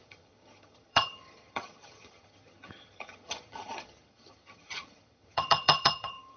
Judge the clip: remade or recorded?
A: remade